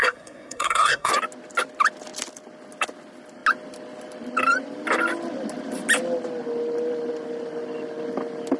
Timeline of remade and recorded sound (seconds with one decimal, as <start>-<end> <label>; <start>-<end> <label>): 0.0-1.1 remade; 1.1-8.6 recorded